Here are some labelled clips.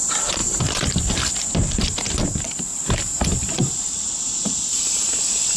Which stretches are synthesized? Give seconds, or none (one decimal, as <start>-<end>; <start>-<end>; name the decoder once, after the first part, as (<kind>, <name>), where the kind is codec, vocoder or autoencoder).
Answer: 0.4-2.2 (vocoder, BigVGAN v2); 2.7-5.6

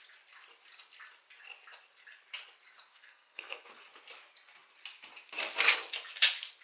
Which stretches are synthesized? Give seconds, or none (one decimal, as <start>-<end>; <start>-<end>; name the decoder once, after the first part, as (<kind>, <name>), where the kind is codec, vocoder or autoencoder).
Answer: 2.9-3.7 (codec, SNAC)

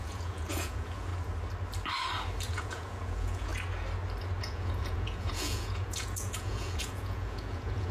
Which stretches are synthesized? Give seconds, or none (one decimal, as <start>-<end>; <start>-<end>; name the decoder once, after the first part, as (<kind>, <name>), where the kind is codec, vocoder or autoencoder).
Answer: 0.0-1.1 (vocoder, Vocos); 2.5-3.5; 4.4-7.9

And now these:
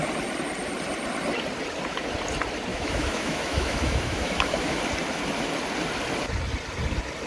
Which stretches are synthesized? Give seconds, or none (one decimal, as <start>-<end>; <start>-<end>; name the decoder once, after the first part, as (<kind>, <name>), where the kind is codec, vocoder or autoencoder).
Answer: 2.7-4.8 (autoencoder, DAC-VAE)

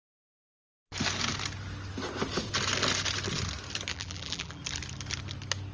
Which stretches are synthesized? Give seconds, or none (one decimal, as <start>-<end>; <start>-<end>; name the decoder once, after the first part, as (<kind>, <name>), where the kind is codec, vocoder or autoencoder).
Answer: 3.9-4.6 (vocoder, BigVGAN v2)

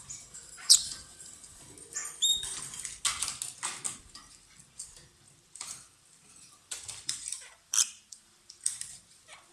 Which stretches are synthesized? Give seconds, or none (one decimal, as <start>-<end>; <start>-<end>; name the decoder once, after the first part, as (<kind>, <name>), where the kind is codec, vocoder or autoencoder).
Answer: 0.0-2.0 (vocoder, BigVGAN v2); 4.0-9.5